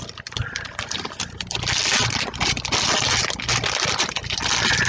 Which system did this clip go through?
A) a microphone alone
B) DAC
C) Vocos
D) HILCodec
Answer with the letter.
A